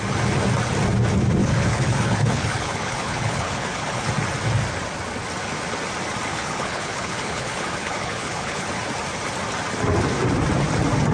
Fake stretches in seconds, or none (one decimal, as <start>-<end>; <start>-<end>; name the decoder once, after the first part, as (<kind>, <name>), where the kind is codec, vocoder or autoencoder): 1.4-4.1 (codec, HILCodec); 6.3-8.7